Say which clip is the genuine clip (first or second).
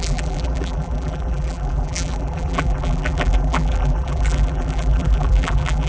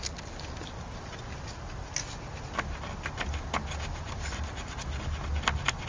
second